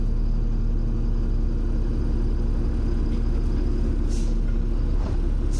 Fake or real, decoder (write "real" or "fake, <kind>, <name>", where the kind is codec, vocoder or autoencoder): real